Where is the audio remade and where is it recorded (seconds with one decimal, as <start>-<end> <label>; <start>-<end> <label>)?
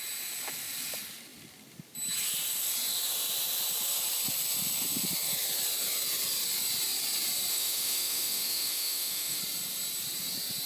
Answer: 0.0-7.5 recorded; 7.5-9.4 remade; 9.4-10.7 recorded